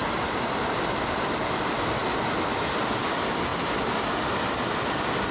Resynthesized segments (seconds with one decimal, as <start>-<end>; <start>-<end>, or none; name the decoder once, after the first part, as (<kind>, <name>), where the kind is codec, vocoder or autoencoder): 0.0-0.7 (vocoder, BigVGAN v2)

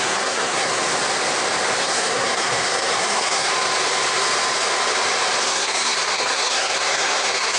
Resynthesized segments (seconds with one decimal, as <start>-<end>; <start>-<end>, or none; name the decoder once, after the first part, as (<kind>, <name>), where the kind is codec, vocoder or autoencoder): 0.0-0.8 (codec, SNAC); 1.8-3.5; 5.4-7.6